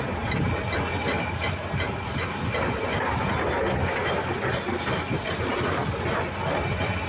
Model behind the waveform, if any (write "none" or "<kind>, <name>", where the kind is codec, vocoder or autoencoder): none